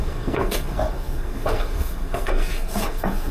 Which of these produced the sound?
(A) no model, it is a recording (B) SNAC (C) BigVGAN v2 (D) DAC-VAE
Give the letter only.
B